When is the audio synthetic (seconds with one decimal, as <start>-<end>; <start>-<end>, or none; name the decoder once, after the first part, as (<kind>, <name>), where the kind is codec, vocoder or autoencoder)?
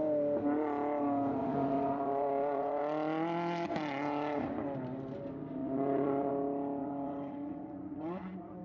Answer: 1.4-2.8 (vocoder, Vocos); 5.6-6.3; 6.8-8.6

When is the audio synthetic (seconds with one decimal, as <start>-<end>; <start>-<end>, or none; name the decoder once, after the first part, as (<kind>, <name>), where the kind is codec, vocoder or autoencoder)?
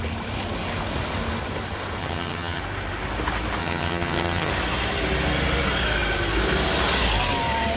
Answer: 2.0-2.6 (vocoder, HiFi-GAN); 3.6-4.5